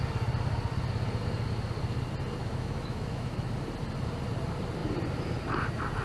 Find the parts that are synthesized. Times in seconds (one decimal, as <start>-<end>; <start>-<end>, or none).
2.4-3.5